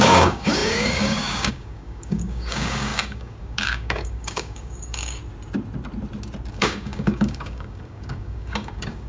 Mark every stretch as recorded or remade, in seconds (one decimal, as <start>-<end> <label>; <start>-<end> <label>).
0.0-5.2 remade; 5.2-6.5 recorded; 6.5-9.1 remade